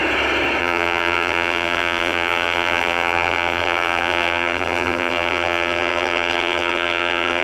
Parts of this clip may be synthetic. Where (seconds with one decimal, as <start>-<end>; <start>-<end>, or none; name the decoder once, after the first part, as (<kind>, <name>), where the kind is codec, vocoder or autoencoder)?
0.6-7.4 (vocoder, BigVGAN v2)